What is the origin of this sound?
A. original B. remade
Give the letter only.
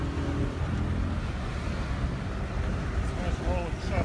A